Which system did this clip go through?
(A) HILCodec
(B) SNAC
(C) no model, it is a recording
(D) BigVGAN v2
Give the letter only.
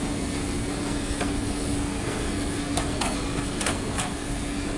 B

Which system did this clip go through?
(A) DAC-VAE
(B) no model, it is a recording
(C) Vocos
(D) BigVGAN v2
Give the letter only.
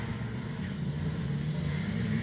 B